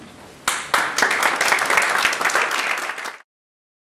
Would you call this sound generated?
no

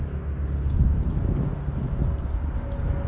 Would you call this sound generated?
no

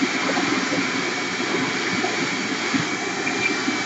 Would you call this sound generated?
no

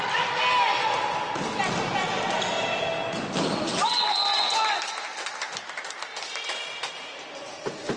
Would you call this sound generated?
no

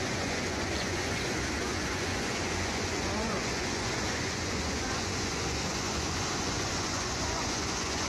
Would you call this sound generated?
yes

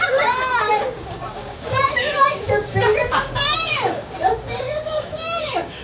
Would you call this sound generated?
yes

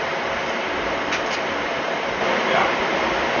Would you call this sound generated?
yes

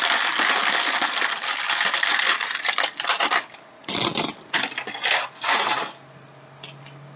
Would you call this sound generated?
no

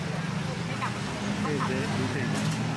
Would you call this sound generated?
no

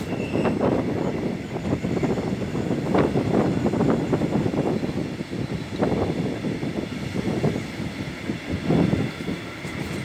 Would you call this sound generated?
no